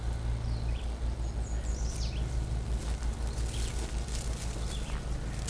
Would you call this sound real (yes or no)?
yes